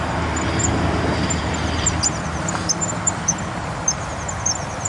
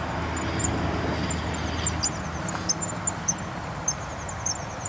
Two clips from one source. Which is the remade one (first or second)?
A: first